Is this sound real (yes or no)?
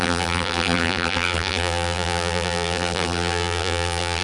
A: no